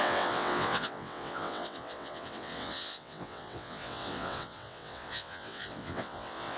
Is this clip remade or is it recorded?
remade